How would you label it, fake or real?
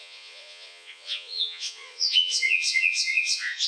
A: fake